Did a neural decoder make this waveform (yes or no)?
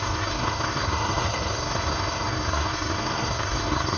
yes